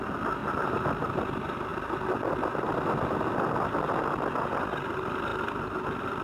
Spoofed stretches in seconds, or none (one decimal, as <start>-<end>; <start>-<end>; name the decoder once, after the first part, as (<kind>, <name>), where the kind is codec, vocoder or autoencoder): none